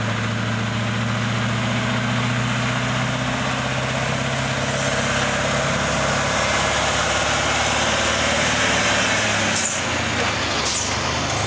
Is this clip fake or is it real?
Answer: real